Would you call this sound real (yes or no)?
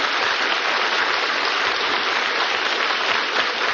yes